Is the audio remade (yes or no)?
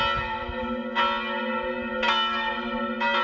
no